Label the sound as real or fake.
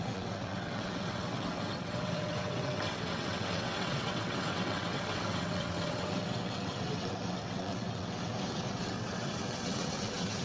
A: fake